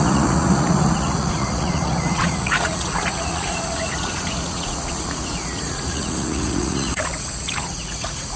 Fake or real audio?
fake